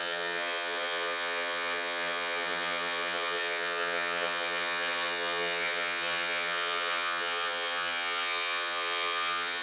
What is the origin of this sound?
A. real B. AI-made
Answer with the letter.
B